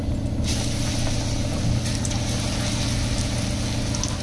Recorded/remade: recorded